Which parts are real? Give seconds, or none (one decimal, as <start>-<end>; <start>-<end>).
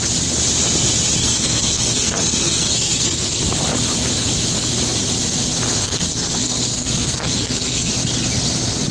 0.0-1.2; 3.4-5.8; 7.9-8.9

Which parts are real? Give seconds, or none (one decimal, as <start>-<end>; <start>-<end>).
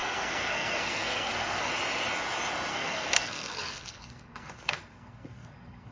1.7-2.7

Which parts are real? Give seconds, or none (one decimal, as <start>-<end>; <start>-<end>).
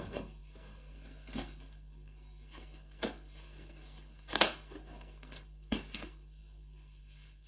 none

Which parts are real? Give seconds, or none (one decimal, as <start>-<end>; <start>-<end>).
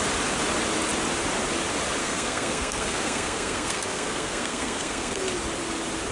0.0-2.0; 5.2-6.1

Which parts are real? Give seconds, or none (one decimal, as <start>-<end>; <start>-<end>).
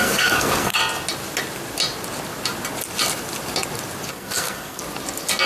0.8-4.1; 4.8-5.5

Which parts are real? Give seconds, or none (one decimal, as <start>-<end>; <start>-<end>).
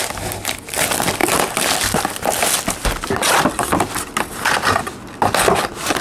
0.0-6.0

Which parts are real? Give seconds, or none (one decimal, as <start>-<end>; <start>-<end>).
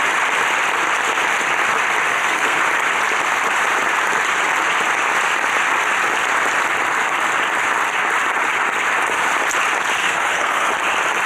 0.0-2.1; 2.6-10.0; 10.7-11.3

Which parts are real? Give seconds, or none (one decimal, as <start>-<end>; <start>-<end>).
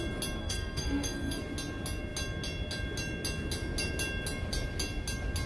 0.0-0.4; 1.4-5.5